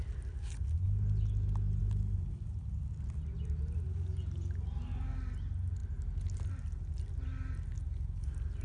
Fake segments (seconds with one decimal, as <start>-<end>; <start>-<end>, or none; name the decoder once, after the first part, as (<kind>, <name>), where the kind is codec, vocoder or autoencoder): none